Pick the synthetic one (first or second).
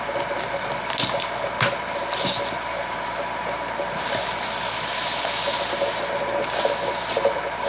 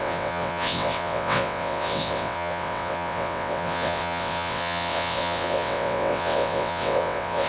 second